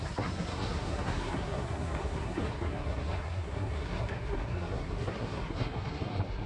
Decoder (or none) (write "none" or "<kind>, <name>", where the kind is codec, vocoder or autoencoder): codec, SNAC